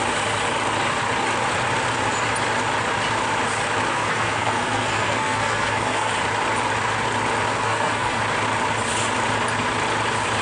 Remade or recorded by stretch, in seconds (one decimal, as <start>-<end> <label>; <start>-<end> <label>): 0.0-3.9 recorded; 3.9-6.1 remade; 6.1-7.5 recorded; 7.5-8.2 remade; 8.2-10.4 recorded